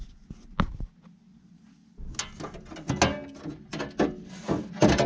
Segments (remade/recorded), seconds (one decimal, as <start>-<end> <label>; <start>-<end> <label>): 0.0-5.1 recorded